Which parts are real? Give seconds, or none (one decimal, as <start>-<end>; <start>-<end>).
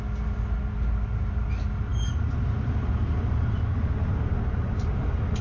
0.0-5.4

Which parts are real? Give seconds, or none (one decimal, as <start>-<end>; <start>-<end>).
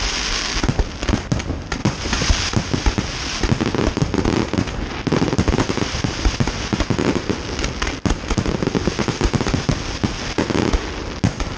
0.0-1.8; 2.3-11.6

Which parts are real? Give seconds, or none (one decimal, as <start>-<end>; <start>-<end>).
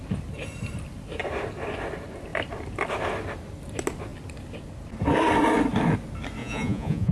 0.0-6.4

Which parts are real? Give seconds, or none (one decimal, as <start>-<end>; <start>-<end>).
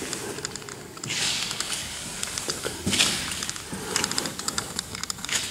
0.0-0.7; 3.6-4.3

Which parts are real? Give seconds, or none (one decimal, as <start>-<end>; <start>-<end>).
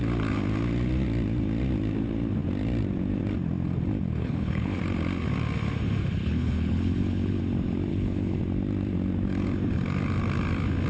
0.0-4.2; 4.8-6.0; 7.4-7.9; 8.4-10.9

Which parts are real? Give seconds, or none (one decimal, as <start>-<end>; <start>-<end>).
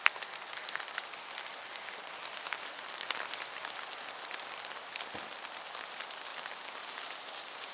0.0-7.7